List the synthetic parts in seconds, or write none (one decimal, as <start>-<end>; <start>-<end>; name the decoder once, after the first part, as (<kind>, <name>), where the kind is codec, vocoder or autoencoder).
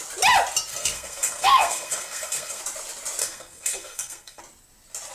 0.7-2.6 (codec, SNAC); 3.2-4.4